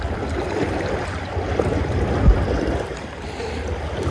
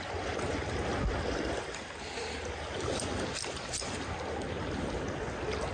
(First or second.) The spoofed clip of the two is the first